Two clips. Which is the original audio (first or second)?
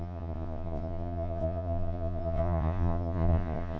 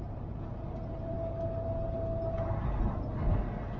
second